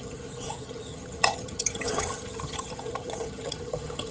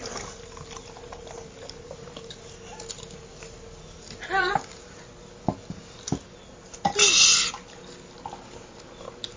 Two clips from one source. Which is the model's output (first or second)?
first